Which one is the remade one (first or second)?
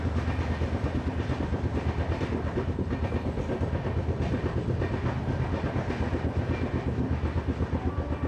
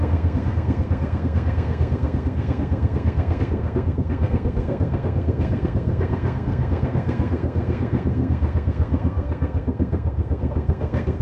second